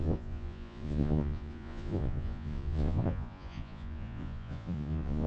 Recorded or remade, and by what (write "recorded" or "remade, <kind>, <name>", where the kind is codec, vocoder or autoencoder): remade, vocoder, Vocos